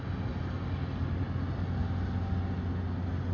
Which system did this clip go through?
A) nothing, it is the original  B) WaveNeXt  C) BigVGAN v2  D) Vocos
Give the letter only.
A